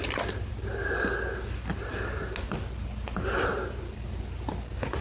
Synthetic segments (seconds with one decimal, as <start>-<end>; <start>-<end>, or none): none